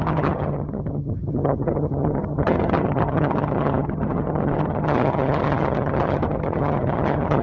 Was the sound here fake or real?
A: fake